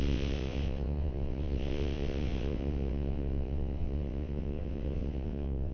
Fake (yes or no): yes